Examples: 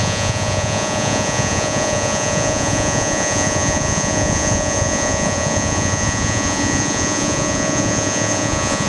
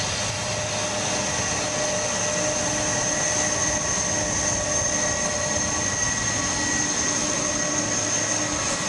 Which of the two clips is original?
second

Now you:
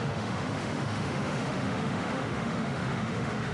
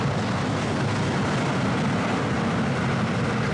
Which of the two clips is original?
second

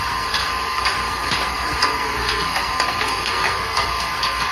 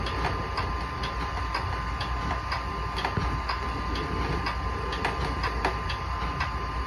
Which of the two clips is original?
second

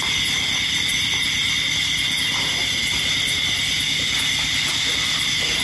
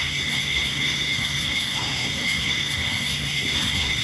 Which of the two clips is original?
first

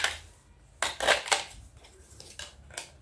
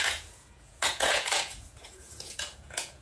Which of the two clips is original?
first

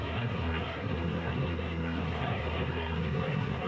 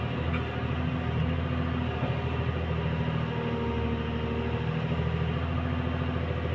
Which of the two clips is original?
second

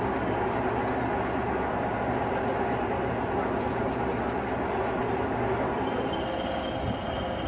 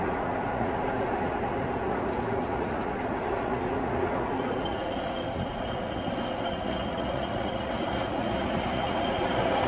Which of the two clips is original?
first